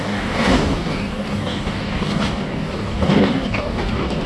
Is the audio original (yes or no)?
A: no